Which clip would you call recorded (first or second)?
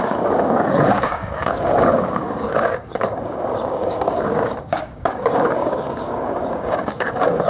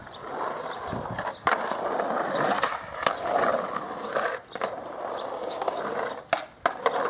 second